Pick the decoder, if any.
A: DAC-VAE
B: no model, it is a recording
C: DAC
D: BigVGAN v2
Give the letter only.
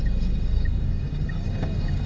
C